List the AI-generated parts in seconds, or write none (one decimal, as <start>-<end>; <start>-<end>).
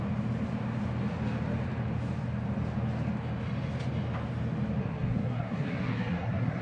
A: 4.8-6.6